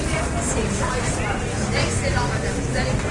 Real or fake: real